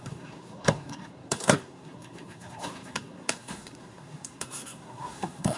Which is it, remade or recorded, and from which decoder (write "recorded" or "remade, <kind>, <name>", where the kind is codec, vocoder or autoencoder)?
remade, codec, SNAC